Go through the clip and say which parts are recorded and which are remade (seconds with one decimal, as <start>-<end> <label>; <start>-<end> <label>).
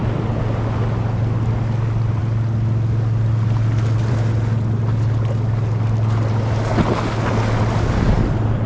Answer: 0.0-8.7 recorded